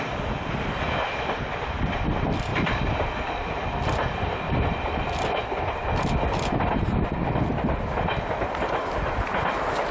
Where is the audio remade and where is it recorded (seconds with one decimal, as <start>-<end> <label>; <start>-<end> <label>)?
0.0-2.5 recorded; 2.5-3.1 remade; 3.1-9.9 recorded